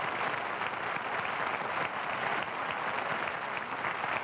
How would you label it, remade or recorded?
recorded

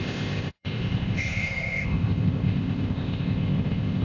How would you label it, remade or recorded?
remade